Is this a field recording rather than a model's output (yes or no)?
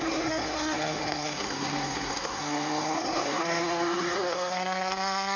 no